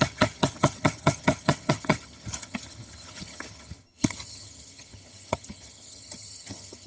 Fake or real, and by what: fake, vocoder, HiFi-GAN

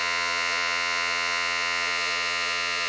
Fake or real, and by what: fake, vocoder, Vocos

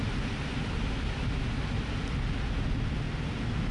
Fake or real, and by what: real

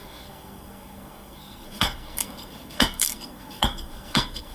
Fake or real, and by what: fake, codec, SNAC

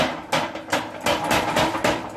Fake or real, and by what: real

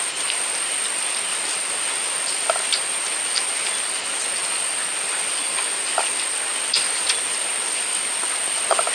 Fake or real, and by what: real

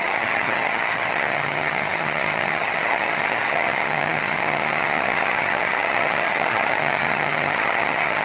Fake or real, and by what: fake, vocoder, HiFi-GAN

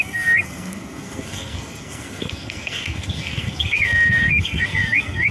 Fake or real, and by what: fake, codec, SNAC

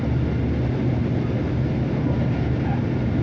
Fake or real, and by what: real